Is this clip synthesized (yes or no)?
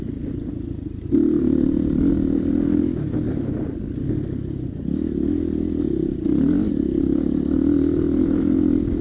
no